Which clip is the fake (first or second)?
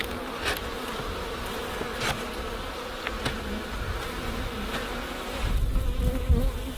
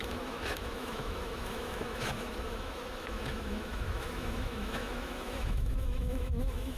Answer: second